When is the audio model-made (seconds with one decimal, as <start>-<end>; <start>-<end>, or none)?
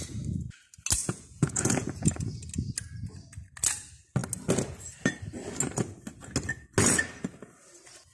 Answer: 1.0-2.5